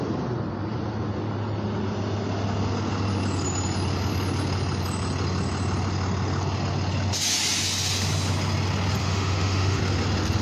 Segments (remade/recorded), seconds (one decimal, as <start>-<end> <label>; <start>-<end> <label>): 0.0-9.0 recorded; 9.0-9.8 remade; 9.8-10.4 recorded